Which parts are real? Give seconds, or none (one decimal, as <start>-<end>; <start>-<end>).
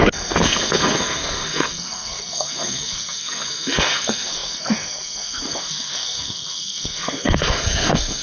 none